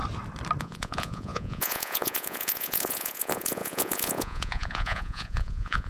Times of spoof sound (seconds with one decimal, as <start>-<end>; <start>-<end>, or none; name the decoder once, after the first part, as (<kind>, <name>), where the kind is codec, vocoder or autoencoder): 0.6-5.9 (vocoder, Vocos)